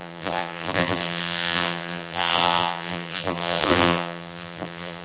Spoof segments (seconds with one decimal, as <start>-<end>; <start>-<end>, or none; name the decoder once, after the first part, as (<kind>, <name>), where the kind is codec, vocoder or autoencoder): 0.0-5.0 (vocoder, BigVGAN v2)